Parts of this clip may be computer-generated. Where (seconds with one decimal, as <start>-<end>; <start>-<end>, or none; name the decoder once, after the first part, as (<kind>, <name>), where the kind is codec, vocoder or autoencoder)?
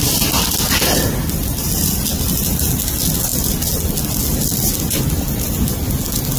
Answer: none